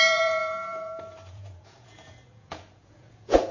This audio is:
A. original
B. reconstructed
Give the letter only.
B